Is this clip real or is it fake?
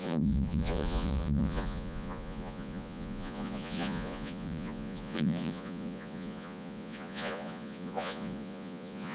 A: fake